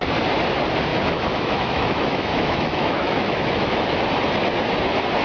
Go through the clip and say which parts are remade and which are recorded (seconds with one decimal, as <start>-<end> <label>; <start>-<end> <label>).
0.0-0.9 recorded; 0.9-4.0 remade; 4.0-5.2 recorded